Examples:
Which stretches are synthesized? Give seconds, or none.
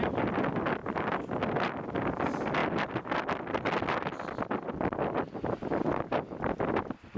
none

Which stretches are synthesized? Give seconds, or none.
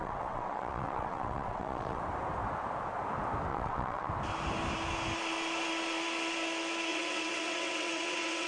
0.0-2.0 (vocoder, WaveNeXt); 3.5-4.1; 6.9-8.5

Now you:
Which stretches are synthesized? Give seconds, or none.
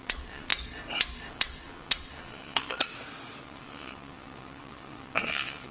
0.0-0.5 (vocoder, WaveNeXt); 1.3-2.9; 3.4-5.7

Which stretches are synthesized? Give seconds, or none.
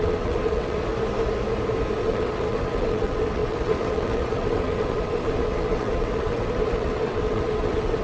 0.0-0.9 (vocoder, WaveNeXt); 2.0-8.0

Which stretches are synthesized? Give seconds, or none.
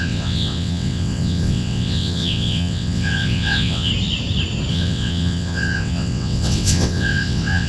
0.0-3.9 (vocoder, WaveNeXt); 4.7-7.7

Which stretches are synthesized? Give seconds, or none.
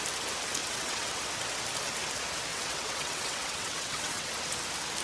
0.6-1.2 (vocoder, WaveNeXt); 2.5-4.3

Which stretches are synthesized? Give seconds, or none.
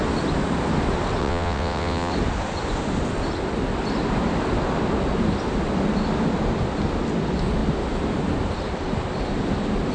1.2-2.1 (vocoder, WaveNeXt)